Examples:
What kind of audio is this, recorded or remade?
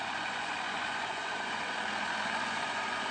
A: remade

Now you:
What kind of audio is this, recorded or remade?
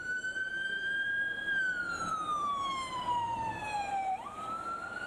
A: remade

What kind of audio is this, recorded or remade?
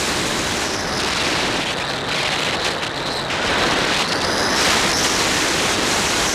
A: recorded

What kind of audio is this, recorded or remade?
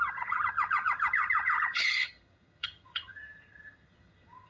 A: remade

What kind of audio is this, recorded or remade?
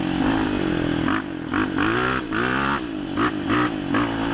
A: recorded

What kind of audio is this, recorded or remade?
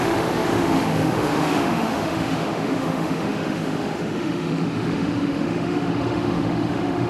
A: remade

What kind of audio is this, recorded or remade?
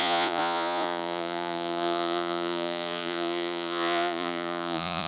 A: remade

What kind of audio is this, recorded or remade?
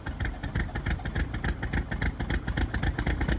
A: recorded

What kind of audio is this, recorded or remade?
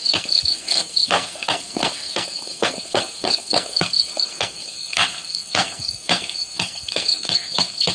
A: remade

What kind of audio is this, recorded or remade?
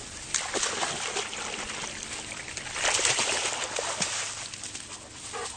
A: recorded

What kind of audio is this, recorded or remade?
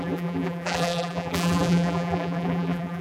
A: remade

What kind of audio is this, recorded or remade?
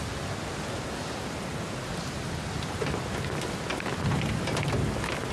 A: recorded